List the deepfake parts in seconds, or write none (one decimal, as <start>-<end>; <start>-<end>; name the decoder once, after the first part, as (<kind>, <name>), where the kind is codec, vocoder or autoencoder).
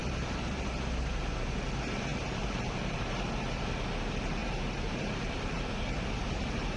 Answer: 0.0-0.7 (vocoder, BigVGAN v2); 2.1-3.3; 4.4-6.8